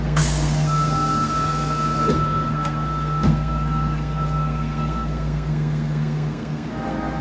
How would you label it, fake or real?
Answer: fake